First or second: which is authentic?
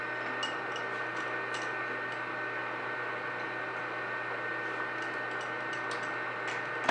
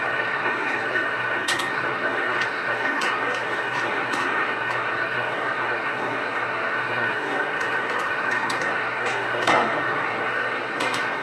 first